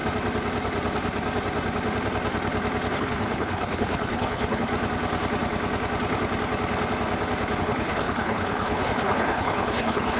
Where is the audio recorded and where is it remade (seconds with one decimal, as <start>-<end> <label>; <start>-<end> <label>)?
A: 0.0-2.9 recorded; 2.9-4.7 remade; 4.7-7.6 recorded; 7.6-10.2 remade